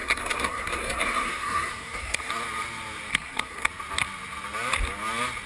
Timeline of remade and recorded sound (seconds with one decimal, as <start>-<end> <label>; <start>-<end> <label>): 0.0-2.3 remade; 2.3-3.1 recorded; 3.1-3.7 remade; 3.7-5.5 recorded